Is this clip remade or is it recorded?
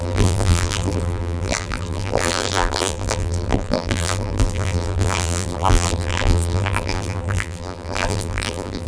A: remade